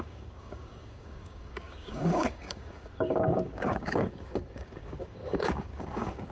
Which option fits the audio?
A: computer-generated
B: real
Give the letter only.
A